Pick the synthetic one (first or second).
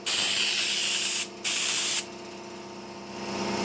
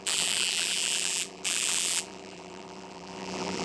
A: second